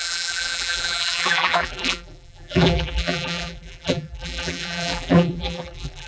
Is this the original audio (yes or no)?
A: no